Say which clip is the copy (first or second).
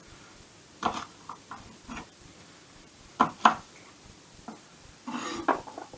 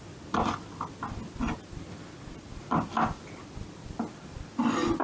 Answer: first